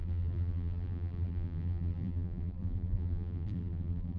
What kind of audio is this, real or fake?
fake